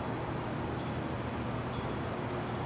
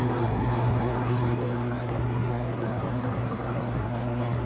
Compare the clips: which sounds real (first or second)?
first